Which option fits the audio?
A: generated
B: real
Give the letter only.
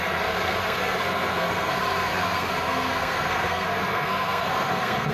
A